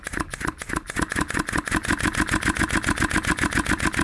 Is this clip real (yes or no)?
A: yes